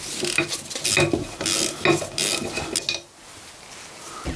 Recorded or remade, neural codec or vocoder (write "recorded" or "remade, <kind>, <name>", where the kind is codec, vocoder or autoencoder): recorded